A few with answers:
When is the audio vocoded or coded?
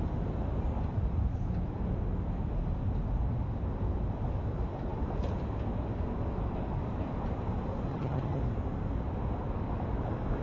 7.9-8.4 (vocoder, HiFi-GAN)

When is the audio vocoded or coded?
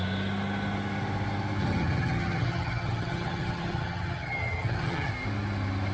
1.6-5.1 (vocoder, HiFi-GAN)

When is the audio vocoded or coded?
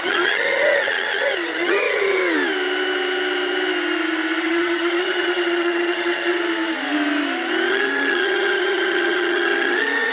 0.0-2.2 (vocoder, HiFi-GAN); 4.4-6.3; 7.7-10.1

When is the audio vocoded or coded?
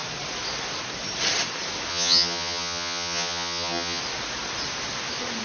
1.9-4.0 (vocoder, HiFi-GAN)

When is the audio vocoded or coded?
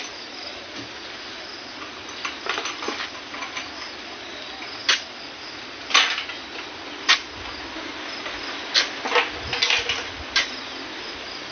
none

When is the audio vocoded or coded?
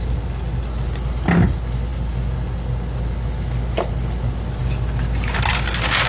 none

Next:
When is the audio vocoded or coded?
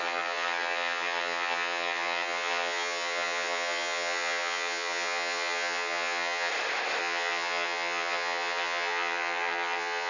0.0-6.5 (vocoder, HiFi-GAN); 7.0-10.1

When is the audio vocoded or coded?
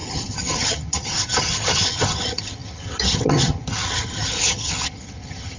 0.0-5.6 (vocoder, HiFi-GAN)